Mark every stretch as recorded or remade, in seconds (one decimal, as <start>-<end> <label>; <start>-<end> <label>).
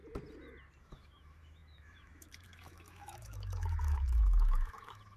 0.0-0.8 recorded; 0.8-5.2 remade